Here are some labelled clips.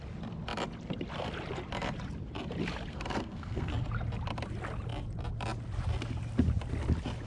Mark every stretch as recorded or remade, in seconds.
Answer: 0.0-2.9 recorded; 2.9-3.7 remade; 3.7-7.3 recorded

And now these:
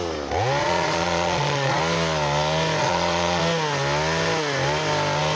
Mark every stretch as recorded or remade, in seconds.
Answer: 0.0-0.6 recorded; 0.6-1.8 remade; 1.8-2.8 recorded; 2.8-3.4 remade; 3.4-5.4 recorded

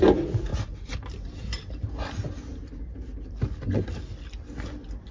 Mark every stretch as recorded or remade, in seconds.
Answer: 0.0-5.1 recorded

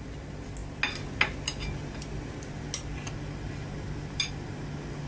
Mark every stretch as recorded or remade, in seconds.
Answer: 0.0-5.1 recorded

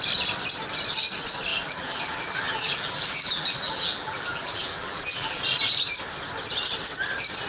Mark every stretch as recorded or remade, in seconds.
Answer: 0.0-1.5 recorded; 1.5-5.4 remade; 5.4-7.5 recorded

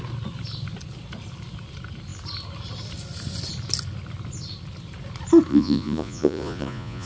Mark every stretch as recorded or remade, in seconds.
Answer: 0.0-5.5 recorded; 5.5-7.1 remade